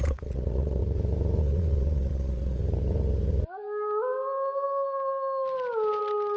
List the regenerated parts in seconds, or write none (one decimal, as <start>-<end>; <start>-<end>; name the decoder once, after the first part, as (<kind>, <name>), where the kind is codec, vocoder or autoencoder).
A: 0.0-0.8 (vocoder, Vocos); 1.4-2.6

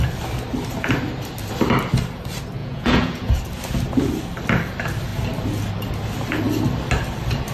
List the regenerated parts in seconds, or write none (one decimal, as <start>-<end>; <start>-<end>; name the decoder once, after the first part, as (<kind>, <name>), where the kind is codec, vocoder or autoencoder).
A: 2.6-3.4 (vocoder, Vocos)

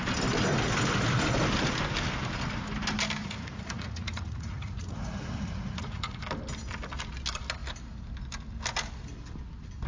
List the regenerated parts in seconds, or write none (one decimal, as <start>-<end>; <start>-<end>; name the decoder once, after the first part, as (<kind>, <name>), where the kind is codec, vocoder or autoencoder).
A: 3.2-6.2 (vocoder, Vocos)